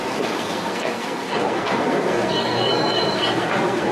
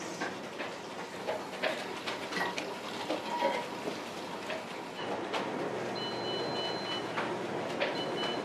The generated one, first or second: first